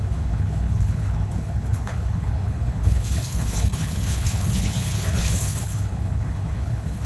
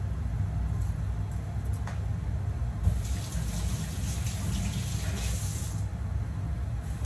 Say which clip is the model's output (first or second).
first